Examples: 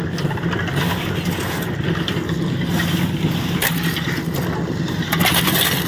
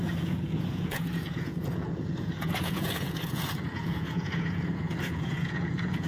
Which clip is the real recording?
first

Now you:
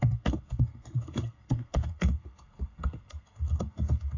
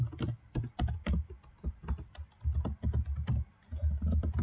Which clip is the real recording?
second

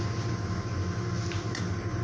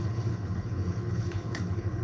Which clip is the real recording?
first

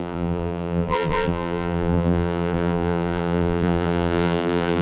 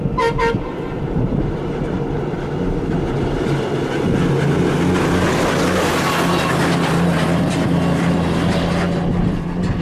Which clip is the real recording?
second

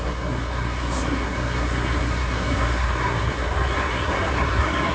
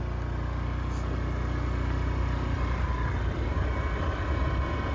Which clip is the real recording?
second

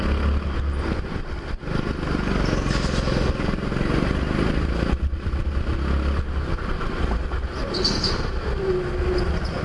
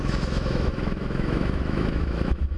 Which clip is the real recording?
first